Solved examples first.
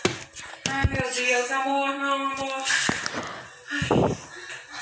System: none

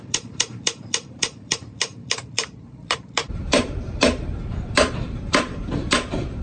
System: vocoder, BigVGAN v2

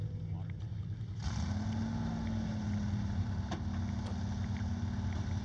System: none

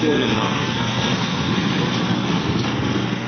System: codec, SNAC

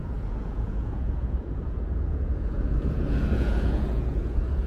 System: vocoder, Vocos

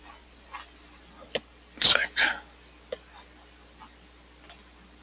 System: none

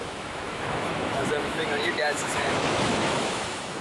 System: autoencoder, DAC-VAE